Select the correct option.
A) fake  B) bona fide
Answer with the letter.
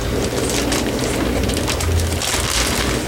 B